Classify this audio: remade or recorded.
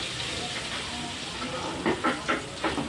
recorded